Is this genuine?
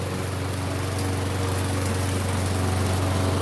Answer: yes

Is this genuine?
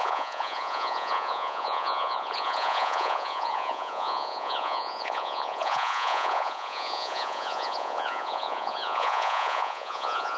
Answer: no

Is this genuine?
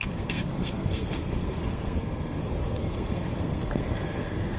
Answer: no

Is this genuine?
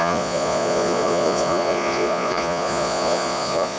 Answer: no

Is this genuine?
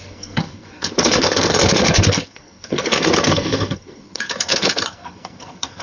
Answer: no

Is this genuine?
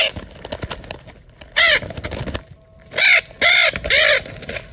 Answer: yes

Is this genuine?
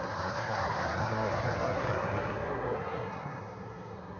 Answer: no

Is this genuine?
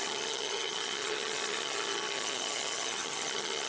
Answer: no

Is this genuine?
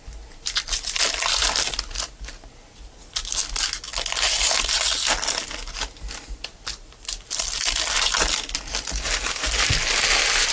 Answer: yes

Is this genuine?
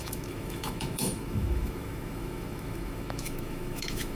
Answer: no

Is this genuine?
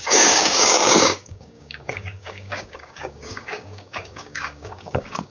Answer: no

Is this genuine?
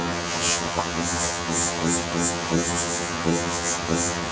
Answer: no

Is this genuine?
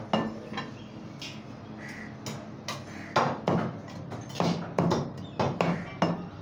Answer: yes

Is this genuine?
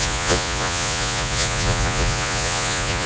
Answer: no